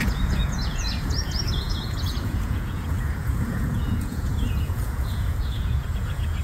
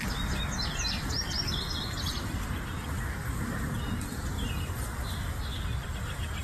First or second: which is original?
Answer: second